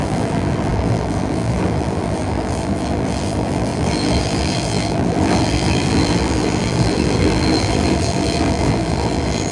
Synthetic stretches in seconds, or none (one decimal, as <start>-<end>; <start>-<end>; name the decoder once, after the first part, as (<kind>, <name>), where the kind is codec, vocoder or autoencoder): 0.0-9.5 (vocoder, BigVGAN v2)

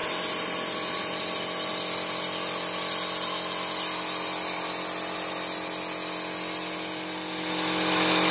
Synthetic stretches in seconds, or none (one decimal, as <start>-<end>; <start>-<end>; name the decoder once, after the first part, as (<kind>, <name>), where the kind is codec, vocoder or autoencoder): 0.0-1.0 (vocoder, BigVGAN v2)

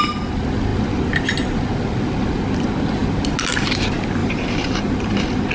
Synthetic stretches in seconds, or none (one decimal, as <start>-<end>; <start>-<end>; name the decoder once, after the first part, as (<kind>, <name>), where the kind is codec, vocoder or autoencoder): 4.2-5.5 (vocoder, BigVGAN v2)